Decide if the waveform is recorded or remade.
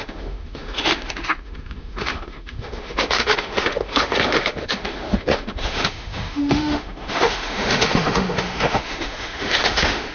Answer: remade